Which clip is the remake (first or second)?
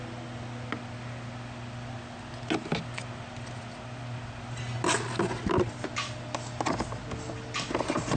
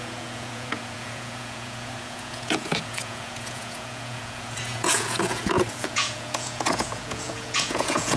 second